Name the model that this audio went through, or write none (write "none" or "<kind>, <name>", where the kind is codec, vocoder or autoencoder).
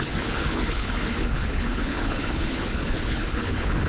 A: codec, HILCodec